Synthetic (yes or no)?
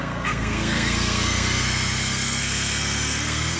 yes